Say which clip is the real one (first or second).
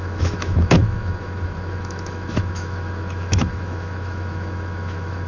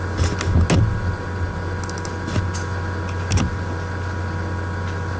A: second